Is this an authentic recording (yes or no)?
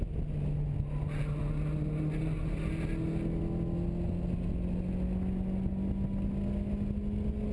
yes